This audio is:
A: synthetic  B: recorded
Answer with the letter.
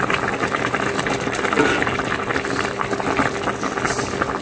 B